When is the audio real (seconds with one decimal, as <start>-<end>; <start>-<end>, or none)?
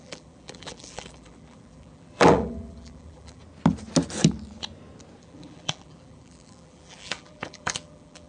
3.4-5.2